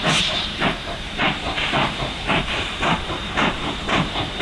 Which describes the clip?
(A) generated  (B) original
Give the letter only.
A